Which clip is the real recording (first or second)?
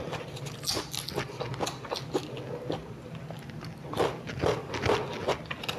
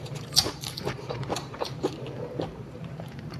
first